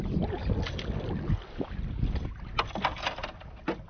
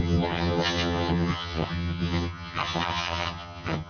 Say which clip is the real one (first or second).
first